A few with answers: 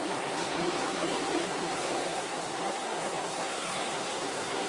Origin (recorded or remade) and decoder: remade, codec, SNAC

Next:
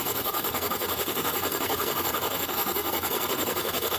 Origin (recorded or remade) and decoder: remade, codec, SNAC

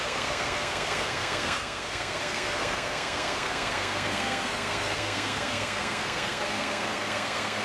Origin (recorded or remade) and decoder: remade, codec, SNAC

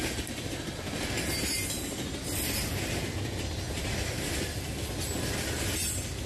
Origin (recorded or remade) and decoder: recorded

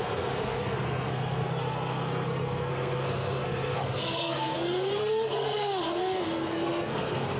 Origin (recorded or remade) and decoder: remade, codec, SNAC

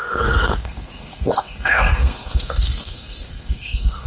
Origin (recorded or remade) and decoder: remade, codec, SNAC